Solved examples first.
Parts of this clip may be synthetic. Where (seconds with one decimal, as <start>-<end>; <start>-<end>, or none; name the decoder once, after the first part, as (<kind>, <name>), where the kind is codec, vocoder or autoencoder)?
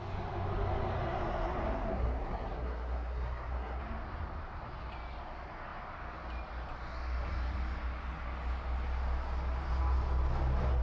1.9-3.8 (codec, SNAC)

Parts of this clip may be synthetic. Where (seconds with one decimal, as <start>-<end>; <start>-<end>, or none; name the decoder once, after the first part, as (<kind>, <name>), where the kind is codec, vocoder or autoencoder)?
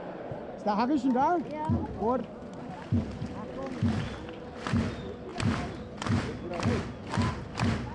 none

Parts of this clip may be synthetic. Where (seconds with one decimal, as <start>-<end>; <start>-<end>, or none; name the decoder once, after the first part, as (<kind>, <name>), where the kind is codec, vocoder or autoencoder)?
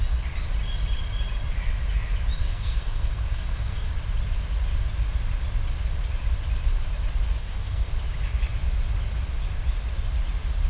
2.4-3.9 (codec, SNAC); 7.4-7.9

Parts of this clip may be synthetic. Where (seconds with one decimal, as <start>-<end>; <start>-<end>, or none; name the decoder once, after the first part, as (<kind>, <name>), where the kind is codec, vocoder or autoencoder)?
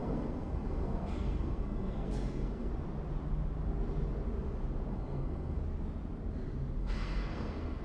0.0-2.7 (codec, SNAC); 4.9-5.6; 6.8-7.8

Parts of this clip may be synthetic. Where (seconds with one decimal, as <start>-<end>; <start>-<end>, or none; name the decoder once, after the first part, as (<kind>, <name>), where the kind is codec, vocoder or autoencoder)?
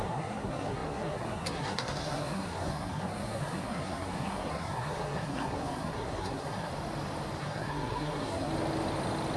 0.0-6.7 (codec, SNAC); 7.4-8.5